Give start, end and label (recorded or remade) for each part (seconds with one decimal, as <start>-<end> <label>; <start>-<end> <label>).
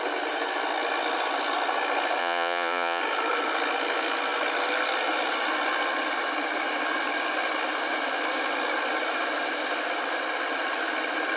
0.0-2.2 recorded; 2.2-3.0 remade; 3.0-11.4 recorded